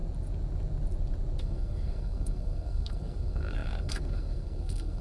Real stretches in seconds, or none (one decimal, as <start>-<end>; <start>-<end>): 0.0-1.4